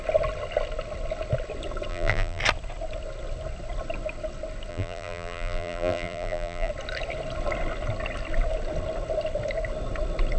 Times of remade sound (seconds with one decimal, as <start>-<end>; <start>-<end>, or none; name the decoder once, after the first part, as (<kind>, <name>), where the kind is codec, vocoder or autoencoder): 1.9-2.4 (vocoder, BigVGAN v2); 4.7-6.7